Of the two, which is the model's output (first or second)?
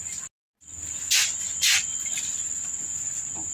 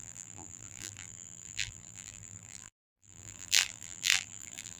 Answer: second